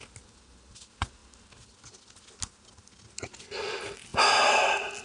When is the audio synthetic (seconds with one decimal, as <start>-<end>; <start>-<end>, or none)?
none